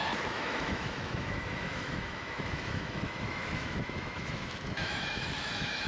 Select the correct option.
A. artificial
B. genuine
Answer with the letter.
A